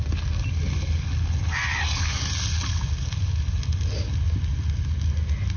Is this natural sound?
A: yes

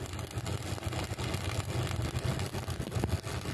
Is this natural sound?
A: yes